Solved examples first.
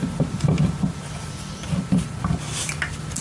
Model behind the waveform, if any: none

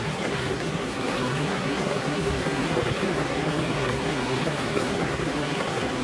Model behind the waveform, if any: codec, SNAC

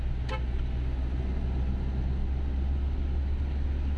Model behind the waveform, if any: none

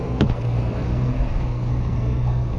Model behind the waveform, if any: codec, SNAC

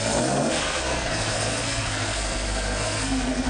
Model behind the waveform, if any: codec, SNAC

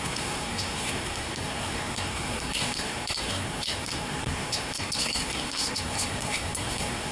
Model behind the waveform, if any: codec, SNAC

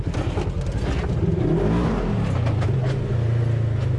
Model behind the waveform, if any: none